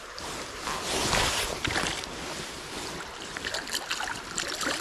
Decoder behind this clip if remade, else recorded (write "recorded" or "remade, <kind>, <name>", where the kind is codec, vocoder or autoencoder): recorded